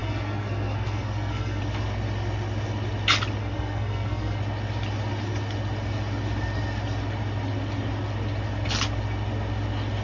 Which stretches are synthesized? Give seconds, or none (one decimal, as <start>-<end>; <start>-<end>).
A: 0.0-1.6; 3.4-4.4